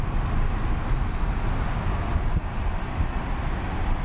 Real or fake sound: real